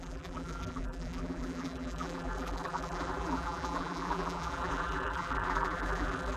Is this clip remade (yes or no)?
yes